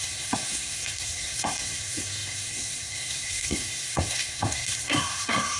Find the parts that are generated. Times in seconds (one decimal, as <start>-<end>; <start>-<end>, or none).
0.0-5.6